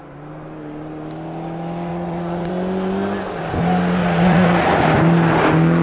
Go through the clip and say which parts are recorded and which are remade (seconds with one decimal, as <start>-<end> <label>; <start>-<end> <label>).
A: 0.0-1.9 recorded; 1.9-2.5 remade; 2.5-4.0 recorded; 4.0-4.7 remade; 4.7-5.8 recorded